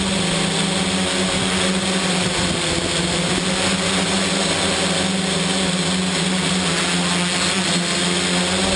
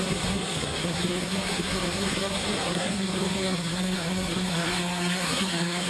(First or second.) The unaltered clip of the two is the first